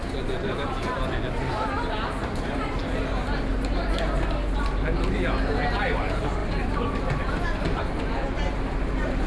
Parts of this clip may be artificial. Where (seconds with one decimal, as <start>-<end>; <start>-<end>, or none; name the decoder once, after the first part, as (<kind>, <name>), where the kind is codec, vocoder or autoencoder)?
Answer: none